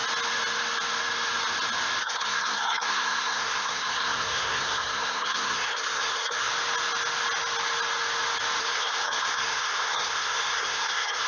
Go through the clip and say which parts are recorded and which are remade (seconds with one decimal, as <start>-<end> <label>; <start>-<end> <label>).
0.0-2.0 recorded; 2.0-6.5 remade; 6.5-8.6 recorded; 8.6-11.3 remade